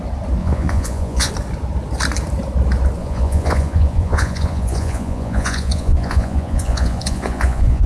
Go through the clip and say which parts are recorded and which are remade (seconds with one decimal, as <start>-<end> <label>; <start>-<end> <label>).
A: 0.0-0.4 recorded; 0.4-1.3 remade; 1.3-3.0 recorded; 3.0-7.9 remade